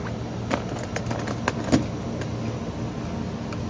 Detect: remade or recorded recorded